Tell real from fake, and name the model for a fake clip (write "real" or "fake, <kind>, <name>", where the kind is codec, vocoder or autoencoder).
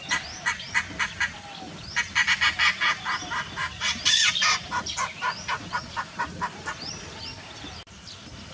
real